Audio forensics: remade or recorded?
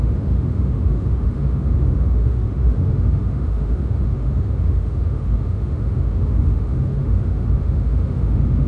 remade